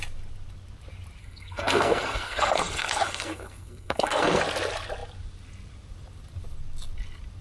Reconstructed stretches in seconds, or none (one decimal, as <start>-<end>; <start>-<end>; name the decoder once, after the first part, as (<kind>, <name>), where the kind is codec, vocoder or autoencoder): 1.2-4.4 (codec, SNAC)